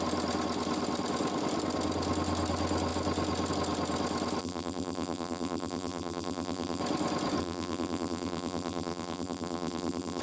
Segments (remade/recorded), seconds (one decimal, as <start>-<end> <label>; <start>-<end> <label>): 0.0-4.4 recorded; 4.4-6.8 remade; 6.8-7.4 recorded; 7.4-10.2 remade